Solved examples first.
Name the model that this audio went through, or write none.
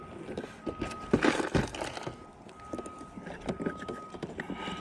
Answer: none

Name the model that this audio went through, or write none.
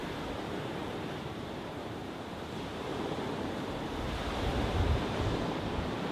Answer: vocoder, BigVGAN v2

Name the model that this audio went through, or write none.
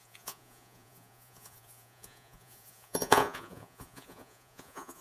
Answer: vocoder, Vocos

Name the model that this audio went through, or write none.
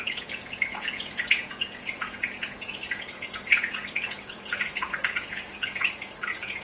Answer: vocoder, Vocos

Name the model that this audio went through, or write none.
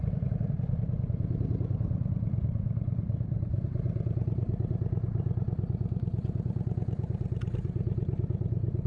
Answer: vocoder, BigVGAN v2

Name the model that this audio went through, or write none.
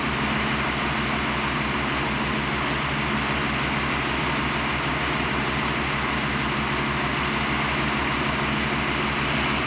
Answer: none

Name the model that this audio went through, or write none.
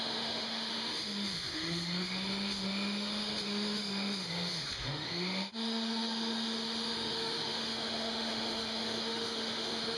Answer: autoencoder, DAC-VAE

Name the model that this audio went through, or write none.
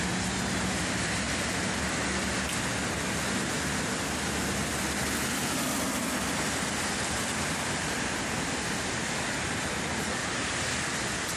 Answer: none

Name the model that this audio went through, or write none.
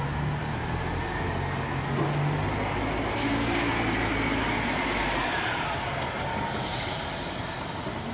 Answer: none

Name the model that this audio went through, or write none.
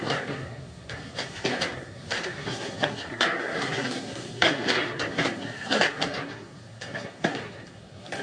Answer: codec, SNAC